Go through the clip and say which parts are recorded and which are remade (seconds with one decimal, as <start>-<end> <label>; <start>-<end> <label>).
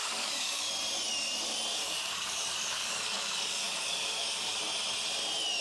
0.0-0.7 remade; 0.7-1.8 recorded; 1.8-4.6 remade; 4.6-5.6 recorded